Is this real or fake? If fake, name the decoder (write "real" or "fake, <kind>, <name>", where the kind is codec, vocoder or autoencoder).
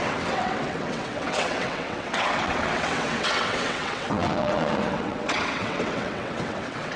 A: fake, vocoder, WaveNeXt